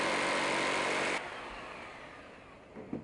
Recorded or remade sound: recorded